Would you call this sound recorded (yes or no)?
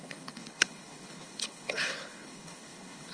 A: no